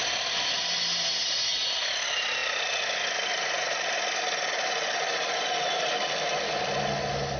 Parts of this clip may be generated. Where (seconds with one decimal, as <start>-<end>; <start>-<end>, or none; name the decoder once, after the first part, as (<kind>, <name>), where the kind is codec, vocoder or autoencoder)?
none